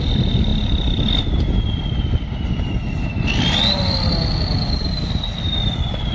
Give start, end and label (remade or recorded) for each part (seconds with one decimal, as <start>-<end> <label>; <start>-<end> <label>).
0.0-6.1 recorded